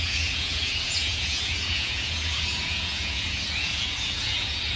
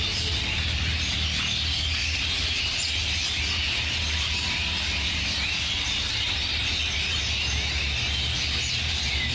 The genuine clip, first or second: second